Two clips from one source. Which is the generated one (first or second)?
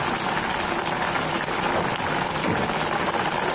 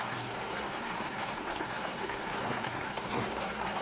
second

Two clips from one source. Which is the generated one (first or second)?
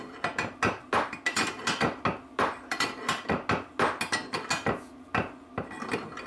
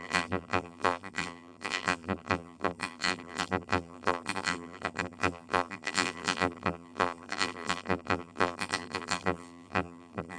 second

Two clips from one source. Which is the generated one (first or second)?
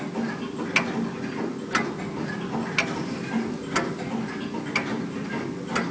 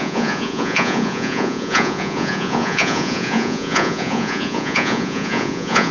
second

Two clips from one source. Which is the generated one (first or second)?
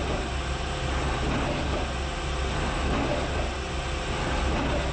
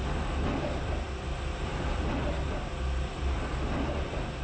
second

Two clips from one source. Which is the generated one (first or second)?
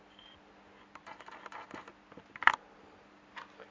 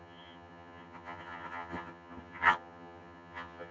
second